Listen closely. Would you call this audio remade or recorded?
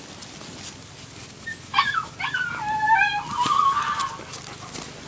recorded